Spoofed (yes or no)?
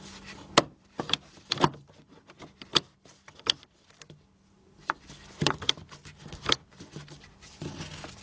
yes